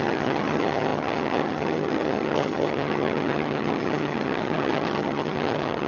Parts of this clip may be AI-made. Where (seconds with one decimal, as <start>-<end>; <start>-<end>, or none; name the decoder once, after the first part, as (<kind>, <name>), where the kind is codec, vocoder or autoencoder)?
0.0-5.9 (vocoder, HiFi-GAN)